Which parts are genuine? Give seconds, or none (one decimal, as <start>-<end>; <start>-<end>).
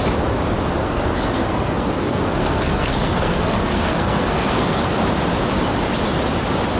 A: 0.0-0.8; 4.9-6.8